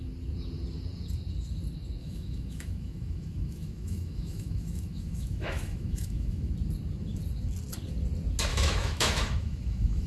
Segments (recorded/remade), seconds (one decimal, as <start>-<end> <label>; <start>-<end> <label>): 0.0-2.0 recorded; 2.0-6.5 remade; 6.5-8.5 recorded; 8.5-10.1 remade